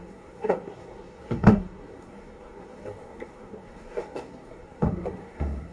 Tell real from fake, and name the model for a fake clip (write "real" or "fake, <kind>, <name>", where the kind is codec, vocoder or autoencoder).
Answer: fake, codec, SNAC